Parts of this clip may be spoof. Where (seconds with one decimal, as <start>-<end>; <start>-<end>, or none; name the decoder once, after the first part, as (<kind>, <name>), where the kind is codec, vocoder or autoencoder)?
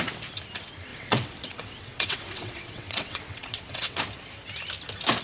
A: 0.9-4.0 (vocoder, WaveNeXt)